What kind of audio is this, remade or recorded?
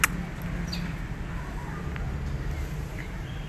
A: recorded